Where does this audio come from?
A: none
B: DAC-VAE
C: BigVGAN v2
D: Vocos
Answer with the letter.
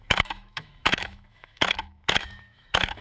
B